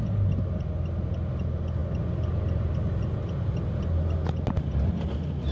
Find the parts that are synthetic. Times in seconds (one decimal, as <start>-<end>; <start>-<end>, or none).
none